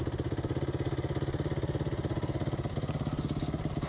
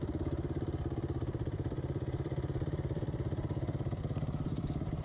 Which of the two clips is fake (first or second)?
second